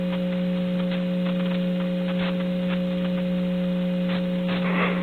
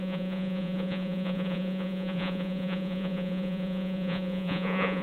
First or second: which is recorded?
first